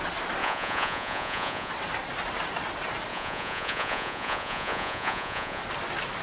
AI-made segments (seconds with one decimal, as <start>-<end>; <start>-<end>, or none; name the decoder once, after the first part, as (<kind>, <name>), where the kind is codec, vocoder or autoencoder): 0.4-1.7 (vocoder, Vocos); 3.1-5.6